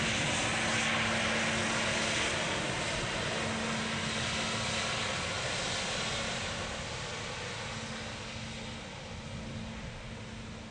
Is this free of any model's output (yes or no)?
yes